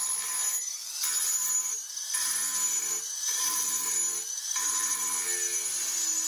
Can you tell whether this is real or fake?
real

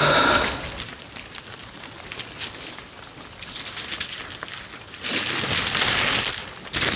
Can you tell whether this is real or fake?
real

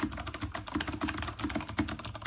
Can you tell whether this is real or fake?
real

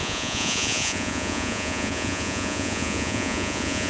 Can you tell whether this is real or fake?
fake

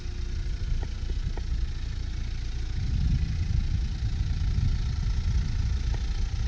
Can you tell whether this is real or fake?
real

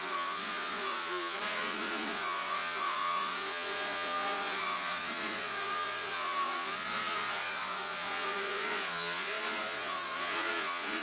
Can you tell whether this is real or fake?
fake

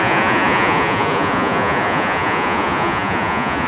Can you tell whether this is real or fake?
fake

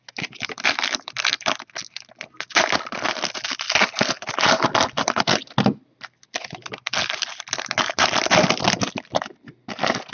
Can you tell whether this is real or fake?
real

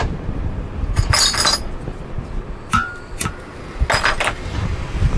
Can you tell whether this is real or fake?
real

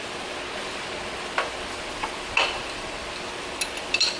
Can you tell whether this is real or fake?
real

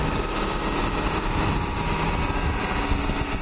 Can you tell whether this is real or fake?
real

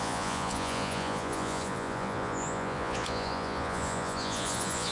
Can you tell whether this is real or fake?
fake